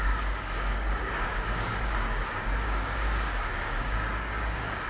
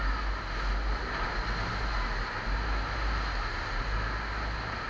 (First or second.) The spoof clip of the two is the first